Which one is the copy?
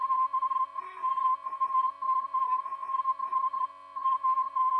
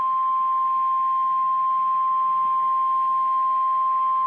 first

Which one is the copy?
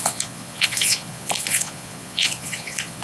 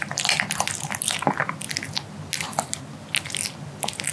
first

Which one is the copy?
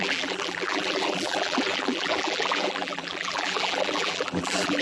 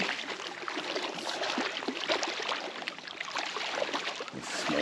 first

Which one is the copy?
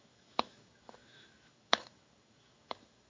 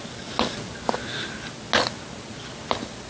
first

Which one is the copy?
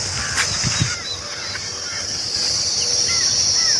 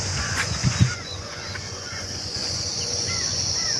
second